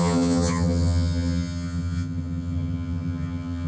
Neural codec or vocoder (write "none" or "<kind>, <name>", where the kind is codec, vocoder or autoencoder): vocoder, HiFi-GAN